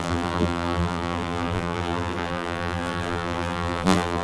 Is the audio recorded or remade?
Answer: remade